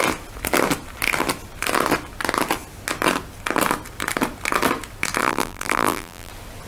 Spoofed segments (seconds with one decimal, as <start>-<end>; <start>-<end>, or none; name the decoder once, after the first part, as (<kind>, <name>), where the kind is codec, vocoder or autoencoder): 5.2-6.3 (vocoder, BigVGAN v2)